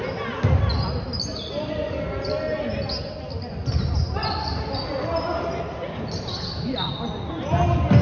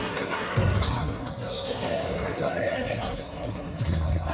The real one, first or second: first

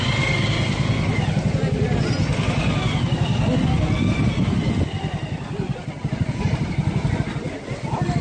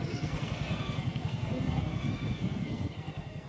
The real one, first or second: first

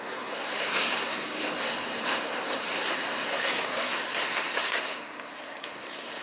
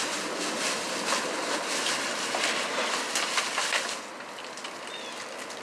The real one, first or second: second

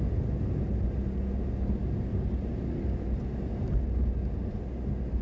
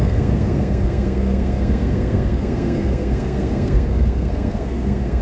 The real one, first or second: first